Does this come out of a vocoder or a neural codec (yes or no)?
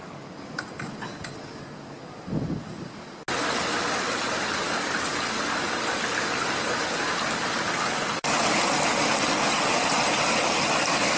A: no